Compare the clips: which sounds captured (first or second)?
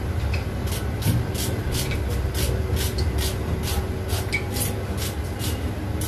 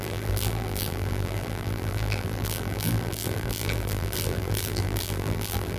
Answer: first